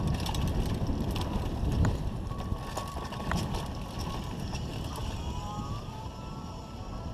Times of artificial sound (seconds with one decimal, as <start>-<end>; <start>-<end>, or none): 0.0-5.0; 6.4-7.1